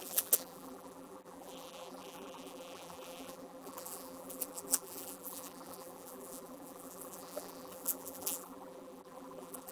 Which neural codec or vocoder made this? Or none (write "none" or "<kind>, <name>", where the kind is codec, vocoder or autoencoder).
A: vocoder, BigVGAN v2